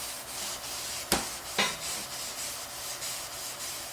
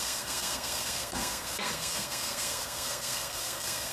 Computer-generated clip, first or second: second